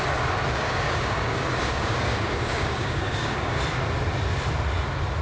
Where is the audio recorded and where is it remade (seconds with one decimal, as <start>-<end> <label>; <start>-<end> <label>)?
0.0-0.5 recorded; 0.5-3.6 remade; 3.6-5.2 recorded